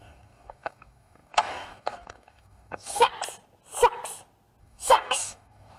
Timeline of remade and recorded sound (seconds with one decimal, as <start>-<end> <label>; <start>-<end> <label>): 0.0-3.1 remade; 3.1-4.6 recorded; 4.6-5.8 remade